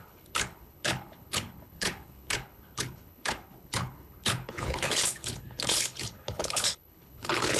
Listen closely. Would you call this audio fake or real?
fake